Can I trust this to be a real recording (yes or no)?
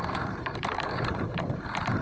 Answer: no